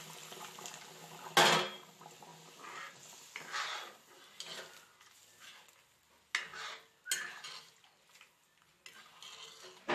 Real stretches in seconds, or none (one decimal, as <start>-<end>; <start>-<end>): 0.0-9.9